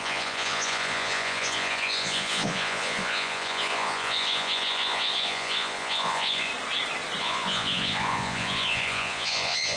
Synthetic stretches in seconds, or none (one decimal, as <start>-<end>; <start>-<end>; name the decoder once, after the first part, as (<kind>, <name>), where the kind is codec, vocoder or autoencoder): 0.0-6.5 (vocoder, Vocos); 7.2-9.8